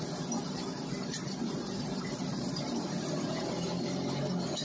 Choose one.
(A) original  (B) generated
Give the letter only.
A